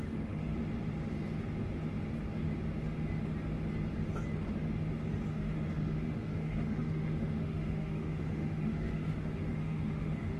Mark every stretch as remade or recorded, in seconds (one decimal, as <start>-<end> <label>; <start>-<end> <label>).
0.0-0.6 remade; 0.6-5.3 recorded; 5.3-10.4 remade